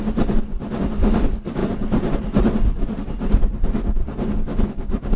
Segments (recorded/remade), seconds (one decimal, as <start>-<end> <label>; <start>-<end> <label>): 0.0-5.2 recorded